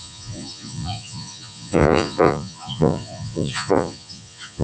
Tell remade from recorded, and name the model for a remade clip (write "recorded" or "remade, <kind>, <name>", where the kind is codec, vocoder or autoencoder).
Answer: remade, vocoder, Vocos